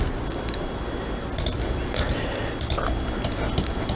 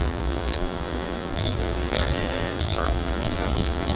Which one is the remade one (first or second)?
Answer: second